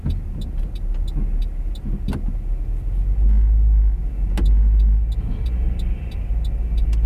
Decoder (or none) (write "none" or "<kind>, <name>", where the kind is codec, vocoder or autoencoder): none